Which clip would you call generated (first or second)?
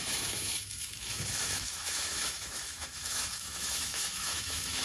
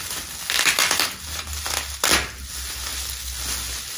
first